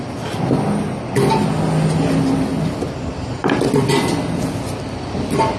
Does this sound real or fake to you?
real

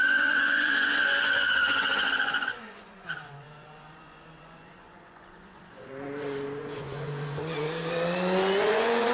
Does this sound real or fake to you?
fake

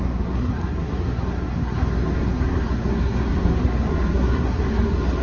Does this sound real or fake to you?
fake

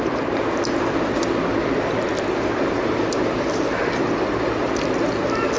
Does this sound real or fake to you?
real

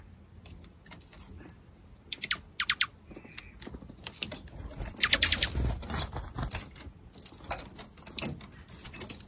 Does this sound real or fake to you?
real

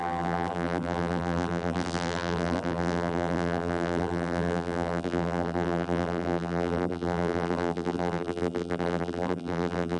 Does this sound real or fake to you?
fake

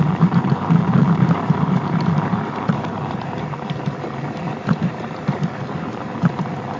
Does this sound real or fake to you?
fake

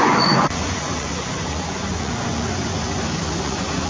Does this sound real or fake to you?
fake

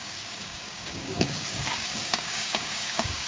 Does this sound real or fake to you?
fake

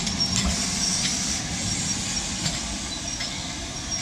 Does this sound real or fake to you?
real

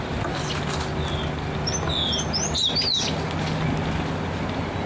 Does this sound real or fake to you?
real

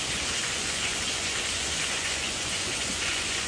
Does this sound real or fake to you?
fake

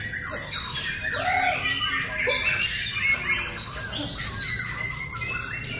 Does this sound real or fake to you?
real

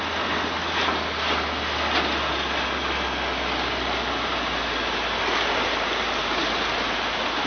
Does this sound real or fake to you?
real